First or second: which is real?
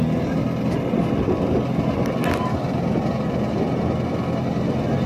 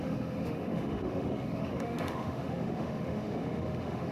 first